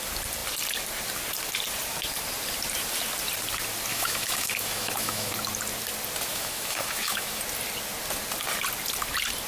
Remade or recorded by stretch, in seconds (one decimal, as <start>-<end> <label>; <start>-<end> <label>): 0.0-3.9 recorded; 3.9-5.3 remade; 5.3-6.3 recorded; 6.3-7.4 remade; 7.4-9.5 recorded